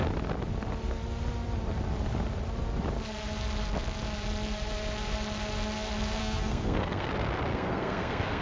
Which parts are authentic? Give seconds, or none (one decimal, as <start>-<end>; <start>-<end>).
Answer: 0.0-6.2; 7.1-7.5

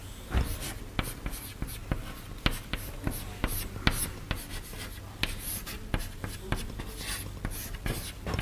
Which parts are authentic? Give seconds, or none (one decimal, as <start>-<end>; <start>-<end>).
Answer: 0.0-8.4